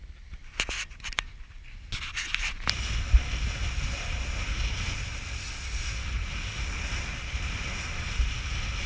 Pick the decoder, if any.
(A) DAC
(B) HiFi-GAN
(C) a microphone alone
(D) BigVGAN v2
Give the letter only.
C